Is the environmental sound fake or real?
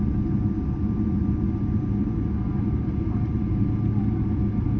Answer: real